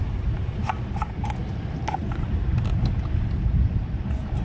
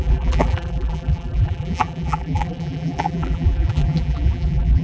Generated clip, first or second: second